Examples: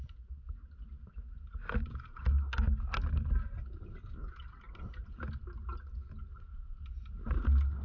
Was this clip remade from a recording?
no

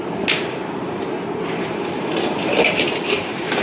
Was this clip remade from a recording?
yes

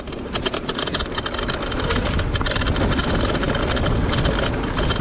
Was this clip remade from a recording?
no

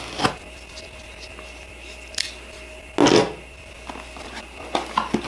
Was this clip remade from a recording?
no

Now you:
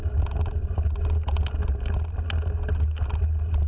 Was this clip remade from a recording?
no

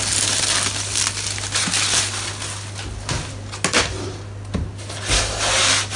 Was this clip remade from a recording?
no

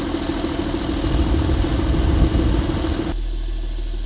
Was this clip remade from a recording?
no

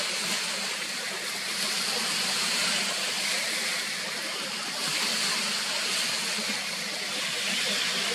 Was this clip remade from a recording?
no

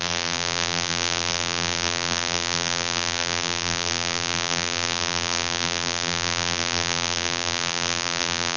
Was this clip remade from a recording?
yes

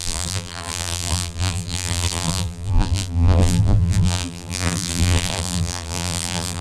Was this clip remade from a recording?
yes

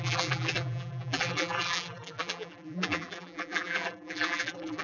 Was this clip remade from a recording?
yes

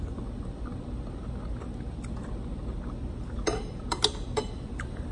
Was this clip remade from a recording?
no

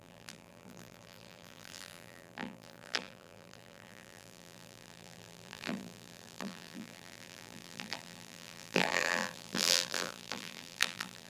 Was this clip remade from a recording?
yes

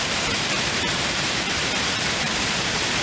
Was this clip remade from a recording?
yes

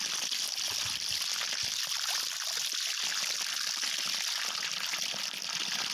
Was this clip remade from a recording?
no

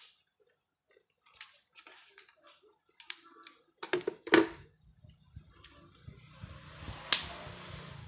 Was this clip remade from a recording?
no